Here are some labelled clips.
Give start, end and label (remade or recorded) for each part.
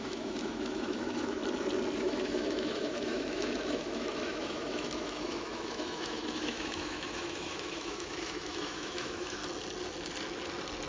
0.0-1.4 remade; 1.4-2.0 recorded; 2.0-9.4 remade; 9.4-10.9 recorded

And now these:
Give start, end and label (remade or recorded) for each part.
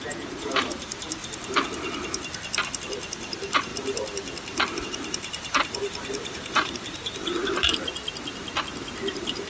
0.0-1.2 remade; 1.2-2.8 recorded; 2.8-3.7 remade; 3.7-4.8 recorded; 4.8-7.4 remade; 7.4-9.1 recorded; 9.1-9.5 remade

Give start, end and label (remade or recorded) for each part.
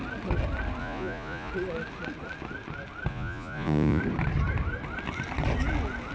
0.0-0.8 recorded; 0.8-1.5 remade; 1.5-3.1 recorded; 3.1-4.0 remade; 4.0-6.1 recorded